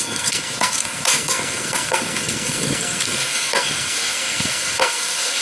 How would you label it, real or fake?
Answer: fake